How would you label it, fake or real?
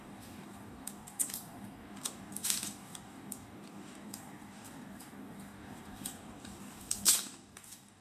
fake